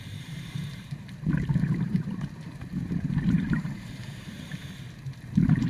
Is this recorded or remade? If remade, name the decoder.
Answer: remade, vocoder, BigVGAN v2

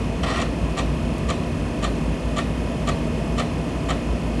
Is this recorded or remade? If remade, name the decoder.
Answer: recorded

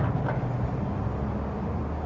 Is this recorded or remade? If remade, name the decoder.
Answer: recorded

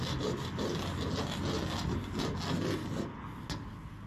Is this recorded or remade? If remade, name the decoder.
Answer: recorded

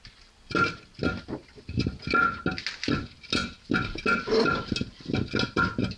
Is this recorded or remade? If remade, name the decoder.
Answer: recorded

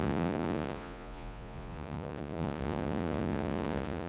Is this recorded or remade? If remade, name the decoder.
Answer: remade, vocoder, Vocos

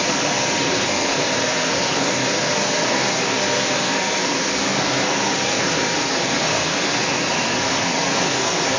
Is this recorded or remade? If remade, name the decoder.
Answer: remade, codec, SNAC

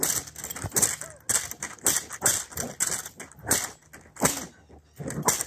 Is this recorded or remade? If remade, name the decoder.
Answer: recorded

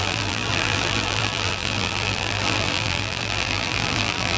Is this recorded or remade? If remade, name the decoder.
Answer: remade, vocoder, BigVGAN v2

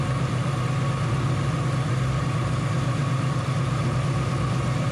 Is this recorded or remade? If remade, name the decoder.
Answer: remade, vocoder, BigVGAN v2